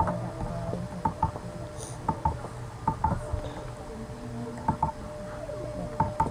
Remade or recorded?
recorded